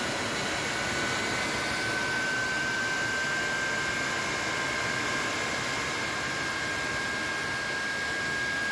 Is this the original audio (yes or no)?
yes